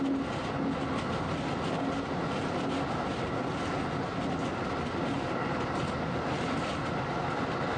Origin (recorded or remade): recorded